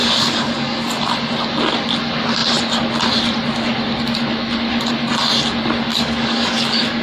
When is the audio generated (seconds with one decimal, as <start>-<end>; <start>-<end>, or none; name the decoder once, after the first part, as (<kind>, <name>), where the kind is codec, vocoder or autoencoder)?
0.0-0.8 (codec, DAC); 5.9-7.0